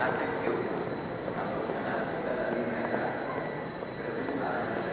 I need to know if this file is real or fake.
real